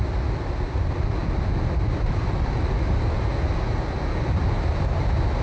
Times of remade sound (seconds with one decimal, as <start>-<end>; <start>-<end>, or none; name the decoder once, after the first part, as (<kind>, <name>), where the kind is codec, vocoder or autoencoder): none